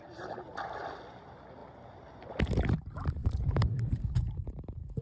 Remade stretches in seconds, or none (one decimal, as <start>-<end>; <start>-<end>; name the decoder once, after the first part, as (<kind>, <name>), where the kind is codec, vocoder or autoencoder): 3.2-5.0 (vocoder, BigVGAN v2)